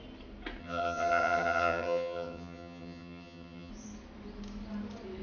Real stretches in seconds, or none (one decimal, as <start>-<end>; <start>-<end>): 0.0-0.6; 3.7-5.2